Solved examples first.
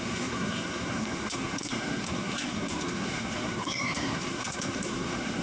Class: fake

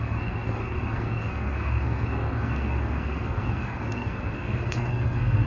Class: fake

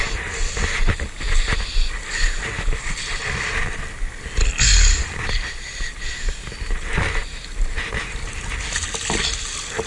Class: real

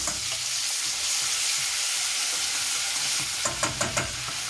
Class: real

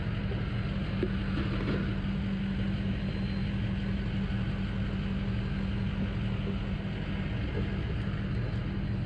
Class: real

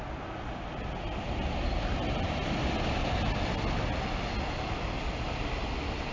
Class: real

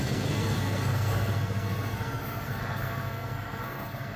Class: fake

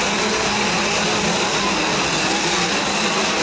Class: real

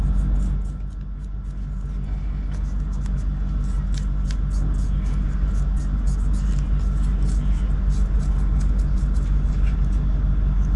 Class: real